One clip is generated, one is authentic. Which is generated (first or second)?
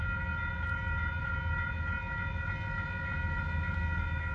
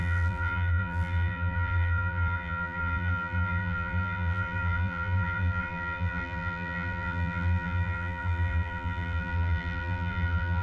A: second